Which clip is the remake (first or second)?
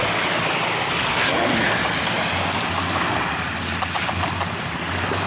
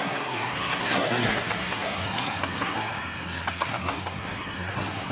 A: second